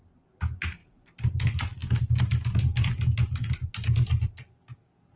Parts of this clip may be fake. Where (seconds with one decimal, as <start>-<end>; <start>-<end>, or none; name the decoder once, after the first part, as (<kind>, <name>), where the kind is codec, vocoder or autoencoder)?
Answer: 0.8-1.4 (vocoder, BigVGAN v2)